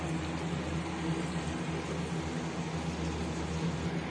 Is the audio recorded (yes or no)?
yes